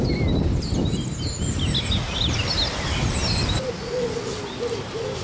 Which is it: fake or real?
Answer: real